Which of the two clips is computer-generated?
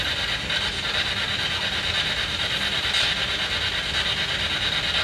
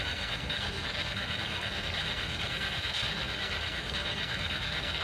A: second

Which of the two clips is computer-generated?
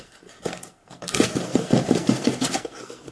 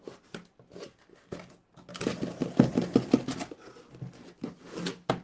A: first